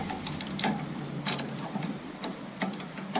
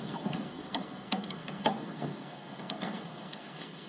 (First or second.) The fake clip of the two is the second